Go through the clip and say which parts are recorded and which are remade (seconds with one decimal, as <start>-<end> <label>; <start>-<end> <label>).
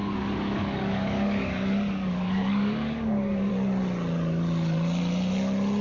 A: 0.0-3.5 remade; 3.5-5.8 recorded